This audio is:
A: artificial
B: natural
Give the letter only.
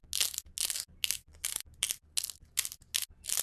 B